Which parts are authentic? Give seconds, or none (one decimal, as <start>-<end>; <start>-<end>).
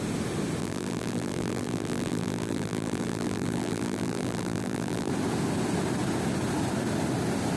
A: 0.0-0.6; 5.1-7.6